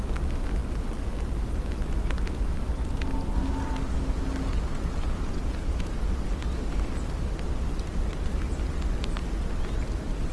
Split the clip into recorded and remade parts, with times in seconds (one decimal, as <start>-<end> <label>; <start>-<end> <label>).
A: 0.0-4.5 recorded; 4.5-6.1 remade; 6.1-10.3 recorded

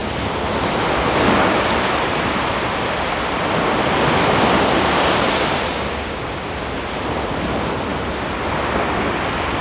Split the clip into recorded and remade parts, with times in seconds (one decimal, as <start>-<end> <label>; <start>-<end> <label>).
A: 0.0-5.7 recorded; 5.7-6.4 remade; 6.4-9.6 recorded

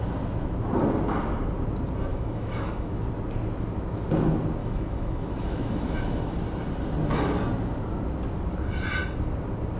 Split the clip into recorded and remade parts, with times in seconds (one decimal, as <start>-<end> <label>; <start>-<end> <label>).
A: 0.0-2.1 recorded; 2.1-3.0 remade; 3.0-4.6 recorded; 4.6-6.4 remade; 6.4-9.8 recorded

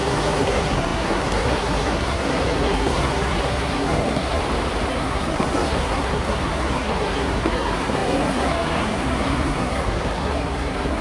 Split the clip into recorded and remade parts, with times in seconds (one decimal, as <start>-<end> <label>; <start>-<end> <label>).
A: 0.0-4.4 remade; 4.4-4.9 recorded; 4.9-11.0 remade